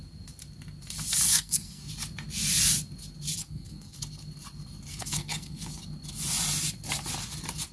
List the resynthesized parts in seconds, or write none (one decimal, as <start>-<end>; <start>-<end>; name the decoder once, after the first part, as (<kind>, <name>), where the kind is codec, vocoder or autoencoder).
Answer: 1.3-1.9 (codec, SNAC); 3.4-4.0; 4.9-5.8